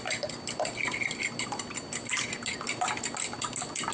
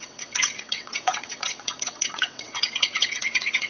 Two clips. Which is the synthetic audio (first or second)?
second